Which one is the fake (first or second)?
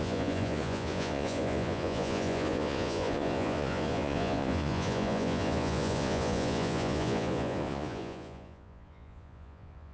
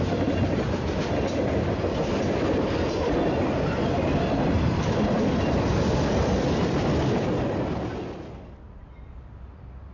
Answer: first